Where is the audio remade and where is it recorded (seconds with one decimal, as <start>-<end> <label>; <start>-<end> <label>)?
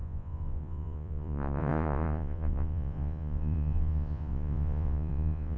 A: 0.0-5.6 remade